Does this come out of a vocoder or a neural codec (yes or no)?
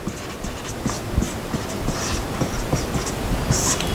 yes